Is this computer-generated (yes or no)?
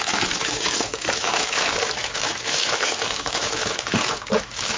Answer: yes